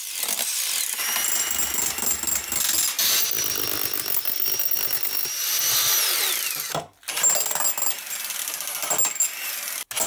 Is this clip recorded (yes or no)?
yes